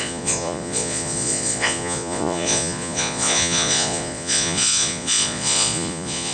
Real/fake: fake